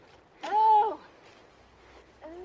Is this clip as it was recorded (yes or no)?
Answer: yes